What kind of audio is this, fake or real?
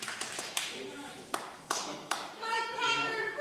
fake